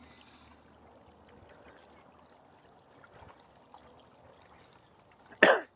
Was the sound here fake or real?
real